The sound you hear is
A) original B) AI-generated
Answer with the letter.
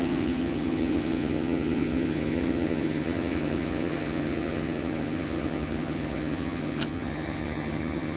B